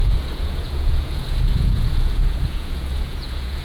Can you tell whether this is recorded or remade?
remade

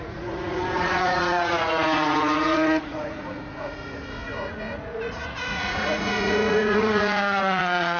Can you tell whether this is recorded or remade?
remade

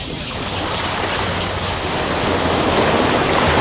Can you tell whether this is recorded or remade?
recorded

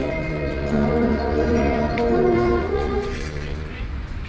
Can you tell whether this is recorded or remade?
remade